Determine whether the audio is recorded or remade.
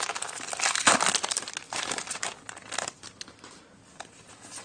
recorded